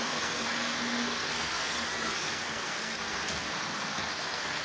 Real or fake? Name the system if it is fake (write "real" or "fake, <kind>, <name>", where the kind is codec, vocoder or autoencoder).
fake, codec, SNAC